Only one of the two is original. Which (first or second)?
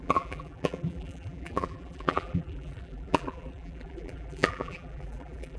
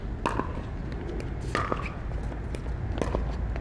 second